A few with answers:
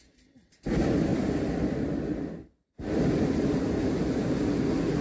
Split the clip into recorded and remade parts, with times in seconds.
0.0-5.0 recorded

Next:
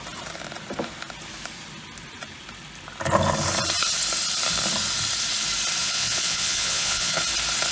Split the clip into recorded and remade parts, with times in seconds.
0.0-5.8 recorded; 5.8-7.2 remade; 7.2-7.7 recorded

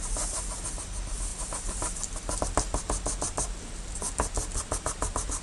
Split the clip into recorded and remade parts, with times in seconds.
0.0-5.4 recorded

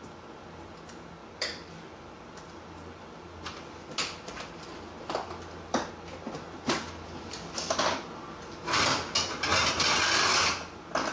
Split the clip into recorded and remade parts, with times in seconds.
0.0-1.2 recorded; 1.2-5.9 remade; 5.9-9.5 recorded; 9.5-10.0 remade; 10.0-11.1 recorded

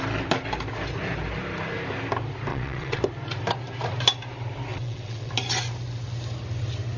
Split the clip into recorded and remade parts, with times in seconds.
0.0-2.5 recorded; 2.5-3.0 remade; 3.0-4.7 recorded; 4.7-5.3 remade; 5.3-7.0 recorded

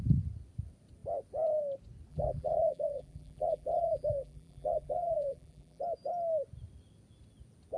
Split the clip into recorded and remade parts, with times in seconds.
0.0-2.1 recorded; 2.1-5.8 remade; 5.8-7.8 recorded

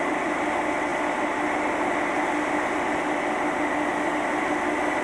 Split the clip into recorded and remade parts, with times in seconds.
0.0-5.0 recorded

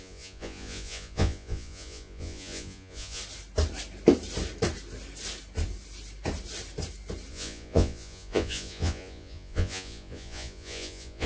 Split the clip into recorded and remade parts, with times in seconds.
0.0-3.2 remade; 3.2-7.3 recorded; 7.3-11.3 remade